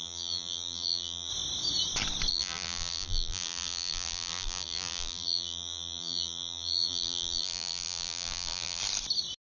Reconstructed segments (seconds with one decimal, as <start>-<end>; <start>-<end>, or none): 0.0-1.3; 2.3-8.8